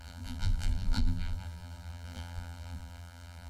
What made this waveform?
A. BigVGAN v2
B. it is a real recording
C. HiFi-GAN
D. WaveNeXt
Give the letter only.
A